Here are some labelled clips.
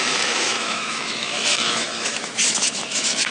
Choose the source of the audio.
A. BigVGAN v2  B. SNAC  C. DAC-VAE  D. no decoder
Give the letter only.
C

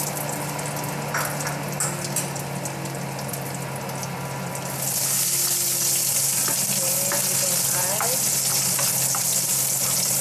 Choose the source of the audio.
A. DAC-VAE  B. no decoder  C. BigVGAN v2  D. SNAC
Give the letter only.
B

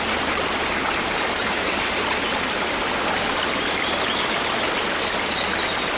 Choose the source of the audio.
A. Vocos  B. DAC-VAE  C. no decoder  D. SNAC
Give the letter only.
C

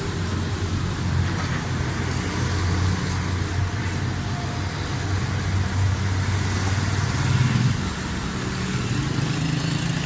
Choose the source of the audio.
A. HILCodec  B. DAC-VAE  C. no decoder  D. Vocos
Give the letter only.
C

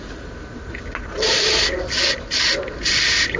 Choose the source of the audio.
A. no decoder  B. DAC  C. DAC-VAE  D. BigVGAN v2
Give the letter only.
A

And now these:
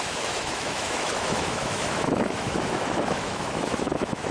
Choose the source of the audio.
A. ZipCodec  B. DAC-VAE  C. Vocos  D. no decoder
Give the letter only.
B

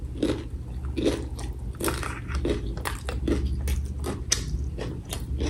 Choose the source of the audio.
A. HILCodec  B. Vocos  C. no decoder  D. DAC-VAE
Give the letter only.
C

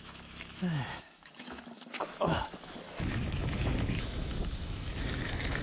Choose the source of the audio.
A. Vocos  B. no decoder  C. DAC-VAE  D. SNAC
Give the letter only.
C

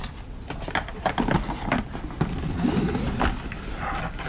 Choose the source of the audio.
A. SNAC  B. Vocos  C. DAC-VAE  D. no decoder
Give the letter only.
D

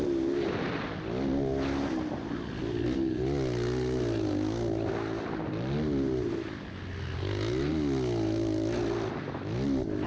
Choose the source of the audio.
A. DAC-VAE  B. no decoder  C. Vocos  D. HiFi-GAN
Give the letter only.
B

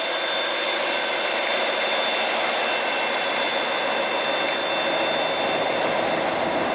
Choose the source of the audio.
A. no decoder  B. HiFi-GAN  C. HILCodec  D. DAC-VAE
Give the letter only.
A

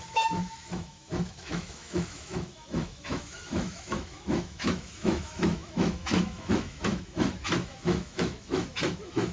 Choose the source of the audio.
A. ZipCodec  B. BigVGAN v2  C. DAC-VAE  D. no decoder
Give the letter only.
C